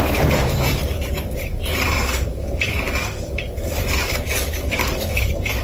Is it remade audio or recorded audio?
remade